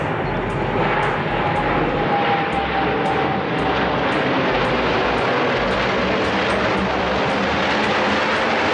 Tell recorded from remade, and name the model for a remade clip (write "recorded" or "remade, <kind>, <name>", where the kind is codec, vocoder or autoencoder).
recorded